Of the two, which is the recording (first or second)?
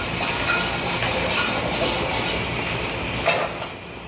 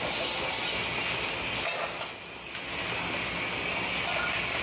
second